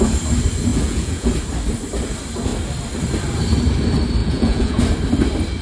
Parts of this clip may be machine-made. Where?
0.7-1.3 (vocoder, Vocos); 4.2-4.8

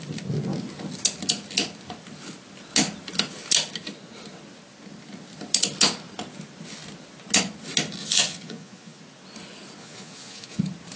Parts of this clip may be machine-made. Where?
8.0-9.0 (vocoder, Vocos); 9.8-10.6